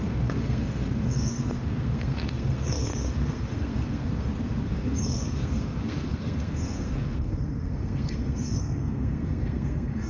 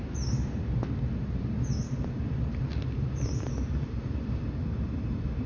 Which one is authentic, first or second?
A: second